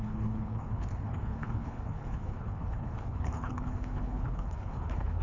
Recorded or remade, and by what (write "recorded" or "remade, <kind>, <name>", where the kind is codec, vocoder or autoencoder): remade, codec, HILCodec